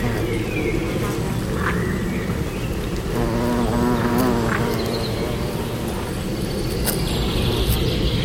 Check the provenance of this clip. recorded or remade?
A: recorded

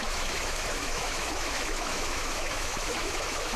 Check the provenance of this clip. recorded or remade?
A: remade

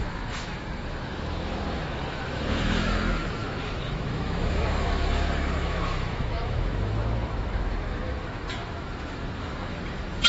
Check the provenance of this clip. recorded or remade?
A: remade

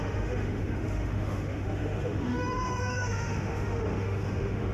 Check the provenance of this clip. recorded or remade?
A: remade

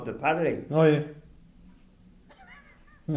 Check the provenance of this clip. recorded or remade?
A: recorded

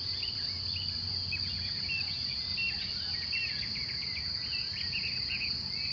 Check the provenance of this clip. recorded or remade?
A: recorded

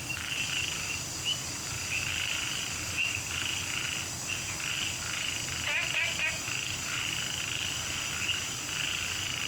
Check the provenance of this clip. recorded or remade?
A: recorded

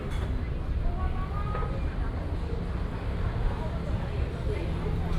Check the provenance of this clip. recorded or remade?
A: recorded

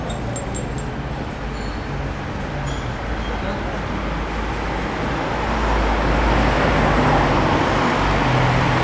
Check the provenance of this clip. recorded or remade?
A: recorded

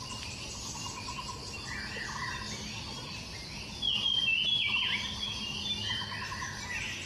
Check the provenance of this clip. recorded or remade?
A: recorded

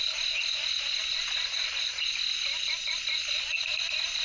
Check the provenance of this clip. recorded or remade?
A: recorded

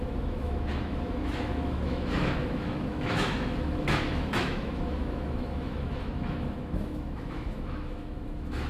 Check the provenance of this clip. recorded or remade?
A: remade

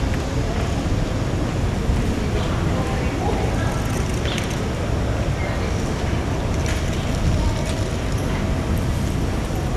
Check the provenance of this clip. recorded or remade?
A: recorded